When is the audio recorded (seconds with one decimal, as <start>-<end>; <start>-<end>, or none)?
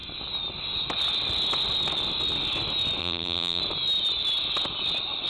0.0-3.0; 3.6-5.3